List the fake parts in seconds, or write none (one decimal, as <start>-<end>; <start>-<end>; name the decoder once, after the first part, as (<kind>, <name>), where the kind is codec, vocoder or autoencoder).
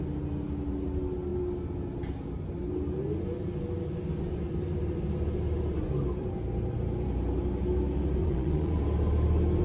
8.2-8.8 (vocoder, Vocos)